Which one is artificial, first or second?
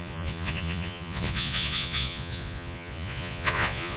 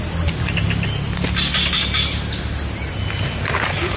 first